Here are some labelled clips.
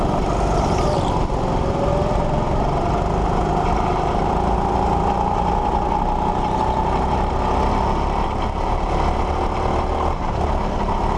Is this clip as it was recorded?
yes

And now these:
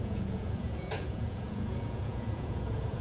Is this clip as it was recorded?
no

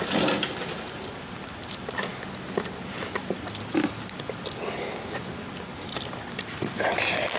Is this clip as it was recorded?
yes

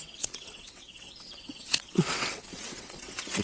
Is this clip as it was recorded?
no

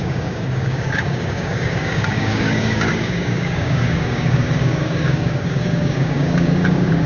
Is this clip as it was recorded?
no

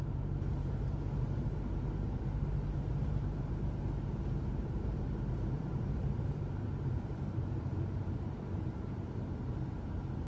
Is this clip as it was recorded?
no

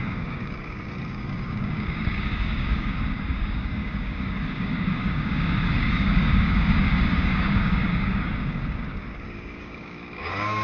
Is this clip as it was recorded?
no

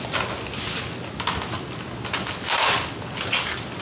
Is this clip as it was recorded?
yes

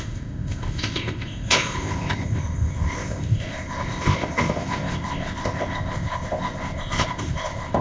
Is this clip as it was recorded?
no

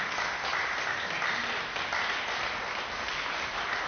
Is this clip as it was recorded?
yes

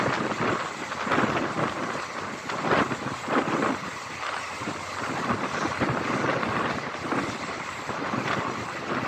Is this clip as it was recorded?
yes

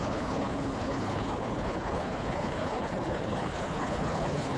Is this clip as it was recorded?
no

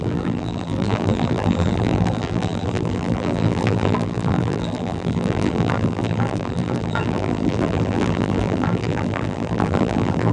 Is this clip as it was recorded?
no